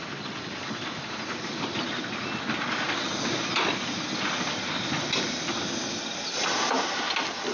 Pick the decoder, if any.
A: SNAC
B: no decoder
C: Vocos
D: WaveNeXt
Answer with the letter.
B